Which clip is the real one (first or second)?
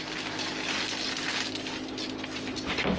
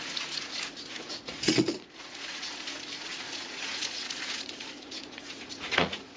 first